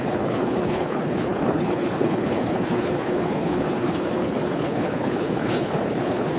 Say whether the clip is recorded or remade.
remade